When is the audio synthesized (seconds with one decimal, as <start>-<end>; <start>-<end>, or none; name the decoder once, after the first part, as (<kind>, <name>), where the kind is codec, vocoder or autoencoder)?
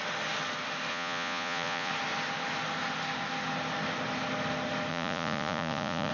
0.9-1.9 (vocoder, Vocos); 4.9-6.1